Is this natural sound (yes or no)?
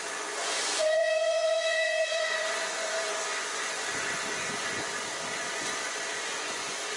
no